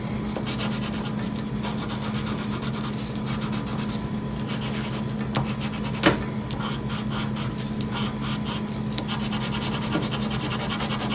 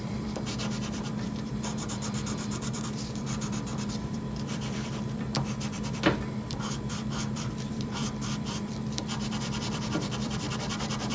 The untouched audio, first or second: first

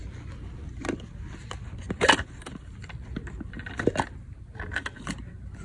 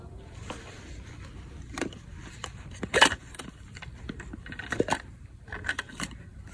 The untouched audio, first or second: first